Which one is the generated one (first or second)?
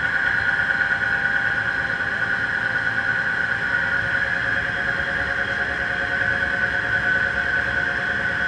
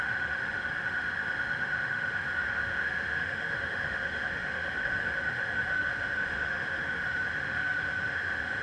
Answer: second